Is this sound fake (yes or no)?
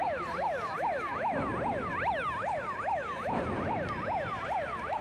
yes